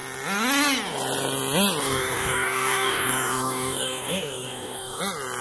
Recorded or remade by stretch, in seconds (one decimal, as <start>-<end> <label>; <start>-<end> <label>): 0.0-1.8 recorded; 1.8-5.0 remade; 5.0-5.4 recorded